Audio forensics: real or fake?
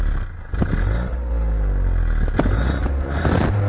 real